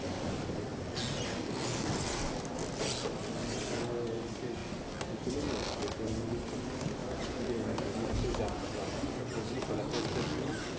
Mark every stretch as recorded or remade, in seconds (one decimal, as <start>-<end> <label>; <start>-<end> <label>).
0.0-10.8 recorded